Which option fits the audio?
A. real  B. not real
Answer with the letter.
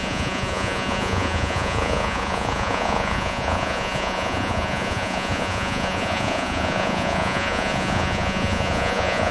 B